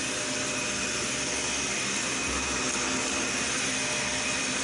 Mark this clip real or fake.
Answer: real